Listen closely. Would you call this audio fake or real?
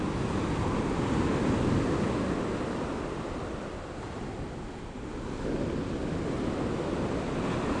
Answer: real